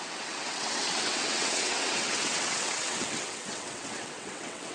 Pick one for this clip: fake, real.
fake